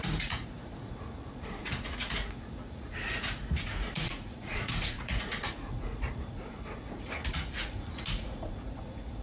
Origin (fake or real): fake